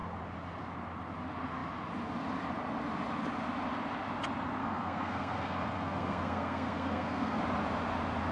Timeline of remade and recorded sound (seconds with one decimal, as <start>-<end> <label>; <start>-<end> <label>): 0.0-4.6 recorded; 4.6-7.4 remade; 7.4-8.3 recorded